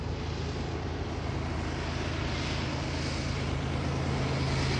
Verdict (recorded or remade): recorded